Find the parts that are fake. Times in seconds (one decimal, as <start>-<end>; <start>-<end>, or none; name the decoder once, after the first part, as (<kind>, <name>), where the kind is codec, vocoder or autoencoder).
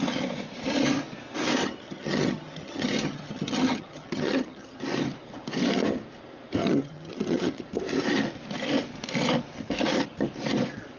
1.6-4.8 (vocoder, HiFi-GAN); 6.6-7.6